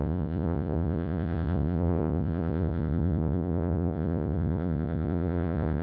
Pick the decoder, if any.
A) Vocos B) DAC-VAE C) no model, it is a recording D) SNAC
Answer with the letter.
A